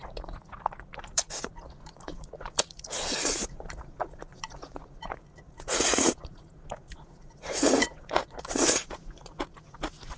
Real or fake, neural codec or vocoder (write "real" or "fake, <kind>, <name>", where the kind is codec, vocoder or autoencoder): fake, vocoder, Vocos